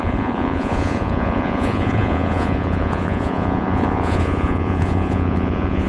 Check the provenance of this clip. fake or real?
fake